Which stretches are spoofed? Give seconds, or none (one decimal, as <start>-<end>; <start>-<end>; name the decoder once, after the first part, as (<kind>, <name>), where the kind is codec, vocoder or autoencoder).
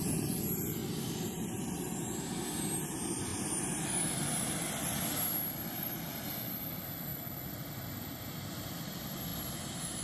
0.0-0.8 (vocoder, BigVGAN v2); 2.7-3.3; 3.8-10.0